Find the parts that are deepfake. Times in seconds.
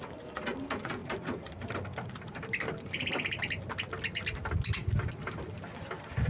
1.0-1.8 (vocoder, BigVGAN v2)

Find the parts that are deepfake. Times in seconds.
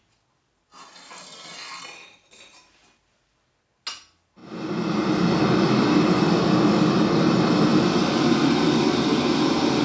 none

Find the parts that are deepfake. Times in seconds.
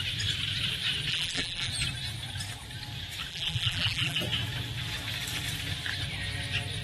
1.1-1.7 (vocoder, BigVGAN v2); 3.3-4.2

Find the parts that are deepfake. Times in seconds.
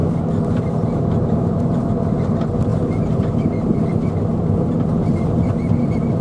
0.6-6.2 (vocoder, BigVGAN v2)